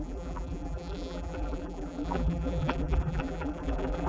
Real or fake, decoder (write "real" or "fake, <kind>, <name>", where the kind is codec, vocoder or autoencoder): fake, vocoder, BigVGAN v2